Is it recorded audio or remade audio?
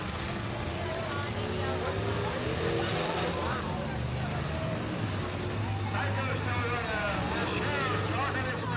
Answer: recorded